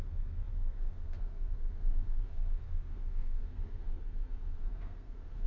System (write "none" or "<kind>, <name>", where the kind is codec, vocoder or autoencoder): codec, SNAC